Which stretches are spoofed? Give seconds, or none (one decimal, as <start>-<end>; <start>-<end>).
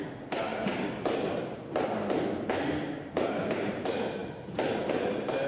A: 0.5-3.8